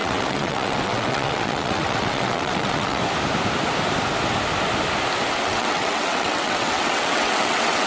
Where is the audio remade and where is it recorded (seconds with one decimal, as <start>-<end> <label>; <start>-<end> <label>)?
0.0-3.0 remade; 3.0-5.3 recorded; 5.3-7.9 remade